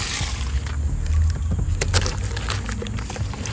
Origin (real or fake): real